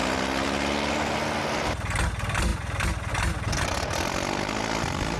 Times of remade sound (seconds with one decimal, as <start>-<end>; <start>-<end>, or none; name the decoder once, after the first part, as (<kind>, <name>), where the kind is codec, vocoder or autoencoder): none